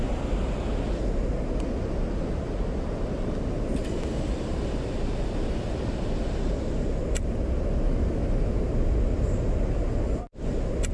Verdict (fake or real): real